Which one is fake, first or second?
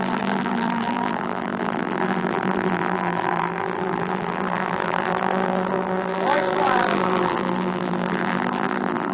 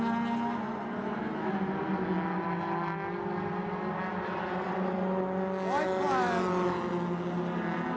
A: first